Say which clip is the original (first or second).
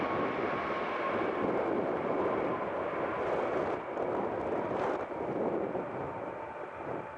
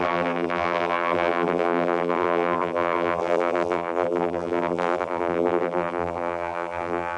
first